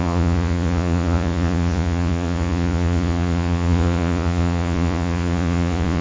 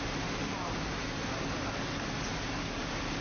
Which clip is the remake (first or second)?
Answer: first